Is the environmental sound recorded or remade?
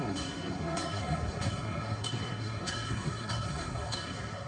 remade